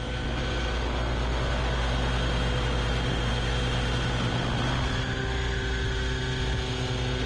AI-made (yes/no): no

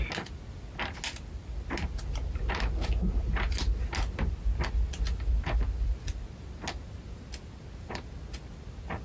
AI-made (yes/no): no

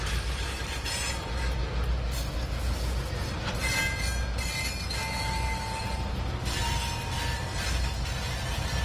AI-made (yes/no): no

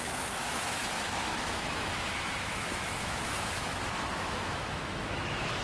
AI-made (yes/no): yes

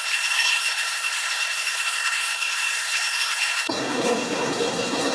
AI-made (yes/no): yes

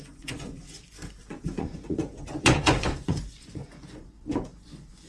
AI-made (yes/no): yes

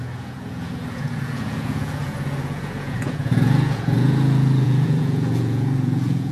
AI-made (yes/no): yes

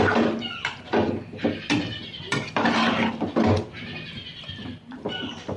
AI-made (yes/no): yes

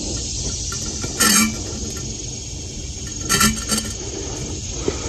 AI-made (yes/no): no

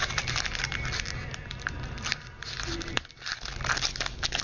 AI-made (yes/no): no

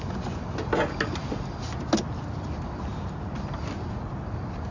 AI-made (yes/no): no